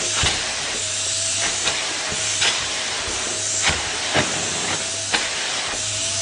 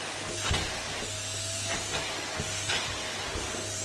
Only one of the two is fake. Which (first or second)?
first